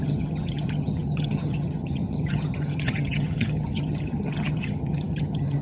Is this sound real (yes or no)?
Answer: no